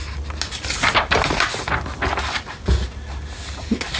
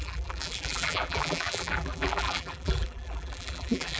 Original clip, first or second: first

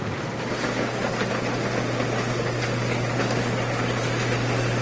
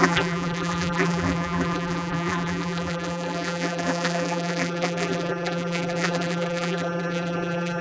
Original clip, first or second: first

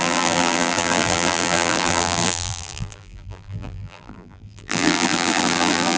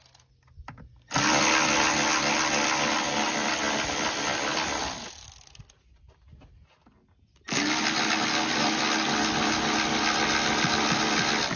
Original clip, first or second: second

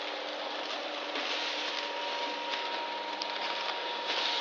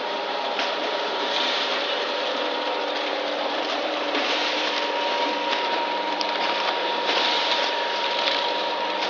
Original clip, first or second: first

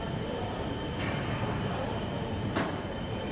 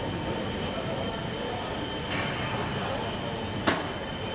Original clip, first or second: second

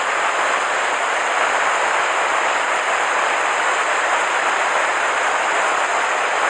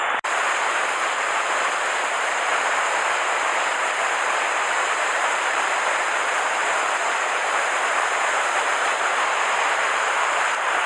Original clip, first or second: first